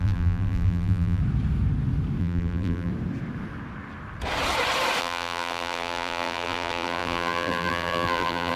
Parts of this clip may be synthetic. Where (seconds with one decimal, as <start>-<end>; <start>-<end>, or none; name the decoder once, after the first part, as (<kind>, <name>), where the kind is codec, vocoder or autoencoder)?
0.0-1.2 (vocoder, BigVGAN v2); 2.2-2.9; 5.0-8.6